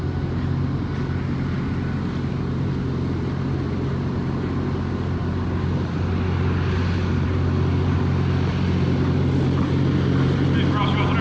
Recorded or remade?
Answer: recorded